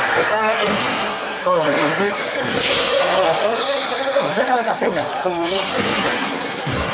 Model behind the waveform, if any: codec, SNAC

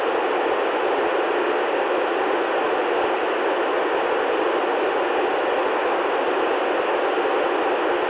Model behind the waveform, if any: none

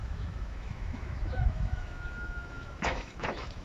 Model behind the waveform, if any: autoencoder, DAC-VAE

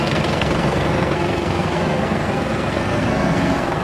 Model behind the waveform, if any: codec, SNAC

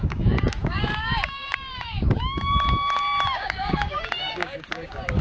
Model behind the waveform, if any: codec, DAC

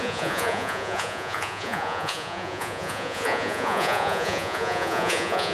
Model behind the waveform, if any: vocoder, Vocos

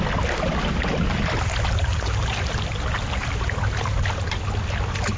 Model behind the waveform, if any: none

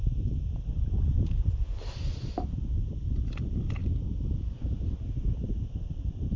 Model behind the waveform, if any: none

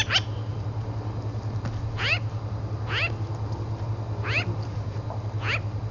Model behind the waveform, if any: none